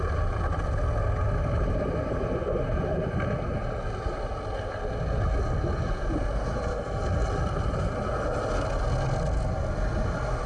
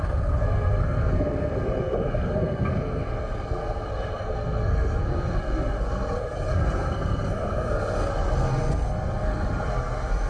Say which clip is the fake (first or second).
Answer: second